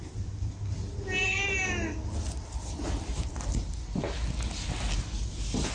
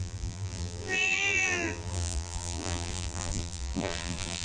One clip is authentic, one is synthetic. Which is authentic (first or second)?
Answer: first